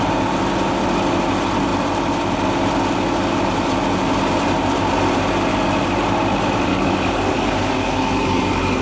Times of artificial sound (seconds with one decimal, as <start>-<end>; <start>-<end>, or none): 6.7-8.8